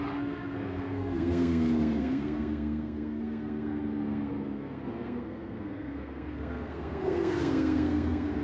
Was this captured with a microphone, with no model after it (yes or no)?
no